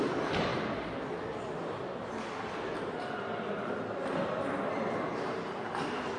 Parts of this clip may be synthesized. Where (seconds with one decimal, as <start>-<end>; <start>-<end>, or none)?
none